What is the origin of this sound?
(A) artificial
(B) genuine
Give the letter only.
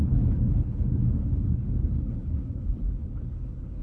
A